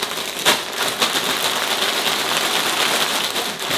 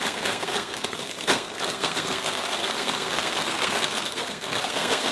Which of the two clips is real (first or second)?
first